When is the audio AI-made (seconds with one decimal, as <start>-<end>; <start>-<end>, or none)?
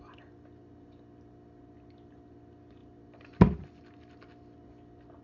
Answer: none